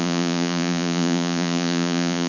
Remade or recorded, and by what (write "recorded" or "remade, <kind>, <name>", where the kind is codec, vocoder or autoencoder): remade, vocoder, Vocos